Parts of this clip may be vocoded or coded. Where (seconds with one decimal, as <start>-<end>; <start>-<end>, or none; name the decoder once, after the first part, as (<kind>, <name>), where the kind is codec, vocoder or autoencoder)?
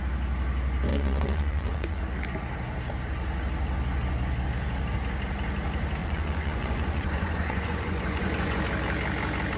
0.9-2.0 (vocoder, Vocos); 6.0-8.6